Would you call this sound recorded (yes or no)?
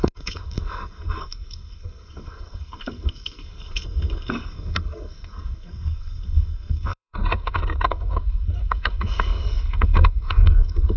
no